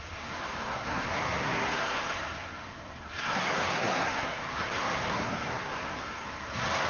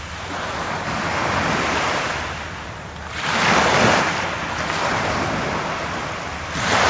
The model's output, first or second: first